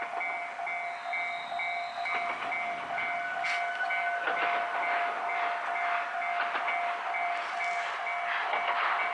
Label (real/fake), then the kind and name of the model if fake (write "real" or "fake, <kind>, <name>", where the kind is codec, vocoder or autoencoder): real